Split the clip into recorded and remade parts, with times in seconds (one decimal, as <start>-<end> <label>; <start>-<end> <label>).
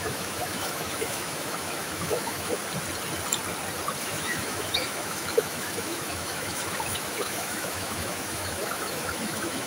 0.0-2.6 remade; 2.6-4.0 recorded; 4.0-9.7 remade